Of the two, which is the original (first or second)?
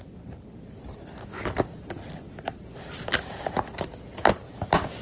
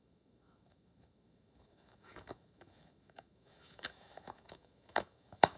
first